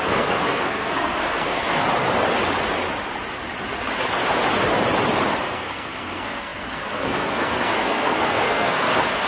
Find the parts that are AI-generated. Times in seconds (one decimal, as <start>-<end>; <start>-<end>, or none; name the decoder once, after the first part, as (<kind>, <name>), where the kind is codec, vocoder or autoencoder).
0.0-1.8 (codec, SNAC); 5.4-9.3